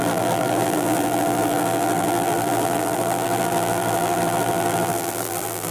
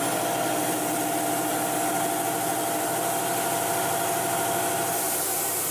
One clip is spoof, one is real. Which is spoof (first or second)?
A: first